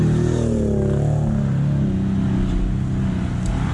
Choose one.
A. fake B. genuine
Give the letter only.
B